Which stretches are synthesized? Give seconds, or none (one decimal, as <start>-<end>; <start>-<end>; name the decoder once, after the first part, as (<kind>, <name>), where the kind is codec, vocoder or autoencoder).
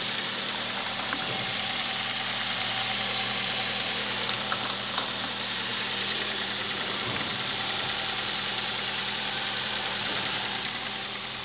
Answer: 0.0-11.4 (vocoder, BigVGAN v2)